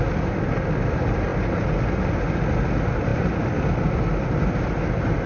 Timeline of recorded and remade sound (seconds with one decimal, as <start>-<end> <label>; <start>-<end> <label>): 0.0-5.3 recorded